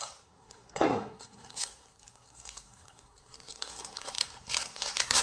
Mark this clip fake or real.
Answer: fake